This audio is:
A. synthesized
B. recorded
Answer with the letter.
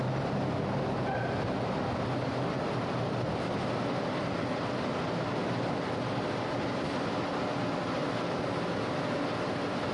A